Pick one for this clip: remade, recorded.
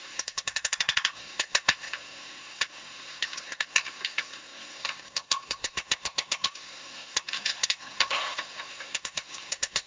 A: remade